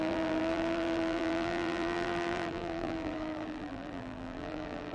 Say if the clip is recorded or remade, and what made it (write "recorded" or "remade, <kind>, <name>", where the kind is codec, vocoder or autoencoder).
remade, vocoder, BigVGAN v2